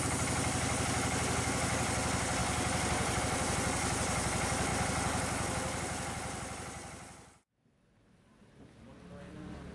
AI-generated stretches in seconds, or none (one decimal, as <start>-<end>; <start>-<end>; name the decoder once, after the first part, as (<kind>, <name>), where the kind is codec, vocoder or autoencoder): none